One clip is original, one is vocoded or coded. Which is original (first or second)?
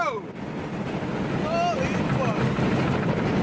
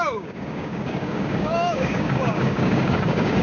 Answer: first